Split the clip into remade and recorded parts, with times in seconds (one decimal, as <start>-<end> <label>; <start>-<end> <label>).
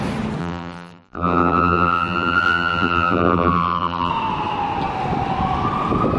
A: 0.0-0.4 recorded; 0.4-4.1 remade; 4.1-6.2 recorded